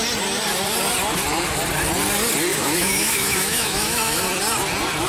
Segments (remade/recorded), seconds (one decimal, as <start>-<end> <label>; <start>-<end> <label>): 0.0-2.5 recorded; 2.5-4.2 remade; 4.2-5.1 recorded